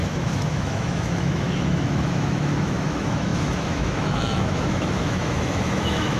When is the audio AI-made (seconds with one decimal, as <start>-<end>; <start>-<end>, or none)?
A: 0.0-6.2